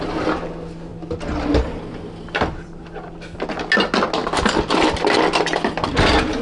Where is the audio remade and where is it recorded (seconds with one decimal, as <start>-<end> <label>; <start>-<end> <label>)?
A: 0.0-6.4 recorded